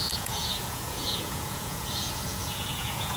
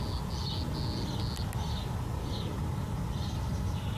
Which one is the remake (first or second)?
first